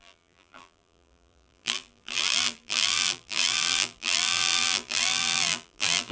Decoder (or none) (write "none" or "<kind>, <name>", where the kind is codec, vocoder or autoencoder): vocoder, BigVGAN v2